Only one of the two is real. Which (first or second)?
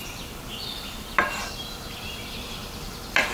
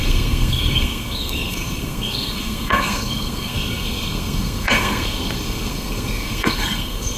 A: first